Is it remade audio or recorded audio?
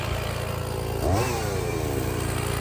recorded